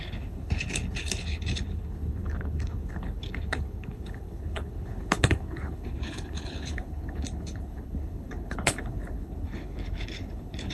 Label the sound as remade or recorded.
remade